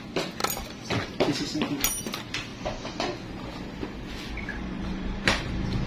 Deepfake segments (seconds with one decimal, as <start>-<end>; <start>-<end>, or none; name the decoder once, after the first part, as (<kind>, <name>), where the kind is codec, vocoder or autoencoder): 4.5-5.5 (vocoder, BigVGAN v2)